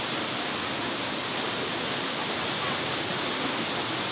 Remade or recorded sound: recorded